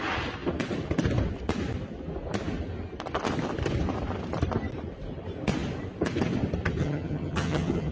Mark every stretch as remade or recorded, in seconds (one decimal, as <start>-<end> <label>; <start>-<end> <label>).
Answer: 0.0-6.8 recorded; 6.8-7.9 remade